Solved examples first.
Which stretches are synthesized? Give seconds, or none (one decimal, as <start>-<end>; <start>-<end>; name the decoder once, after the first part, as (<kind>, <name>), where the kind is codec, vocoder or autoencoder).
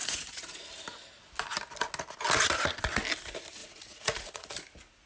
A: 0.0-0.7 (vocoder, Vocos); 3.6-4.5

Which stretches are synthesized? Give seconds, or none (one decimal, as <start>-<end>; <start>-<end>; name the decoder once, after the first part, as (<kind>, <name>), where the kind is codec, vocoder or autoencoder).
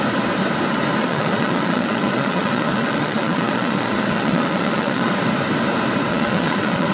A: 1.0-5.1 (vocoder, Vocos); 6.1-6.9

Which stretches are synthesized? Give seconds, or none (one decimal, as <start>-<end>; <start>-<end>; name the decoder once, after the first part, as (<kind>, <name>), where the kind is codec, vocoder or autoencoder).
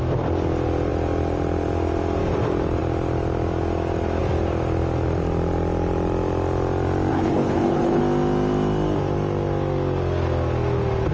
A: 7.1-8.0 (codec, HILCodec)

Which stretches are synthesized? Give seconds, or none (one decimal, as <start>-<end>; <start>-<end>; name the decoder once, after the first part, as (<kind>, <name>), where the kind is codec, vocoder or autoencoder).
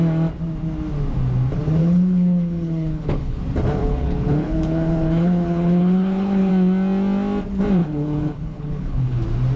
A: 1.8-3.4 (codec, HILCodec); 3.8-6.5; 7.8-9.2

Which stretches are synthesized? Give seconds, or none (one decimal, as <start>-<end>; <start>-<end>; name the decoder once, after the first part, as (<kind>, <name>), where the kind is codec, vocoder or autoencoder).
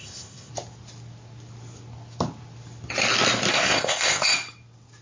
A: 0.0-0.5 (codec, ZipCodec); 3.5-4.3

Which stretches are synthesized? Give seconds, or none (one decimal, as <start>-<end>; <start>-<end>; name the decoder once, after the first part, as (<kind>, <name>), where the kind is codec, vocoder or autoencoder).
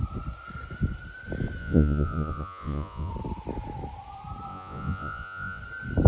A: 1.6-3.1 (vocoder, Vocos); 4.5-5.6